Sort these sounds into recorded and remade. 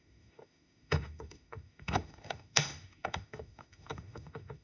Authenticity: remade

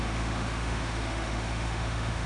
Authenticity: remade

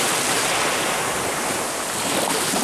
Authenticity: recorded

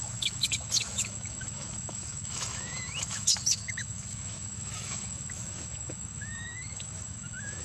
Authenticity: remade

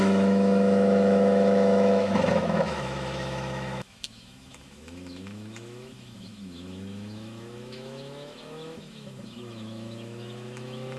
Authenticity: remade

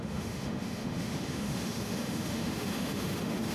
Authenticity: remade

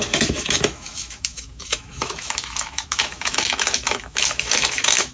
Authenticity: remade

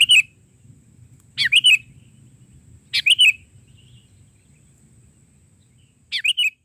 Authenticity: recorded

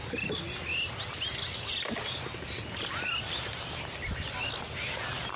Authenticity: recorded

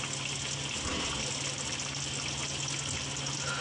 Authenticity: recorded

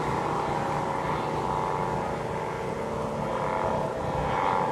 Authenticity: recorded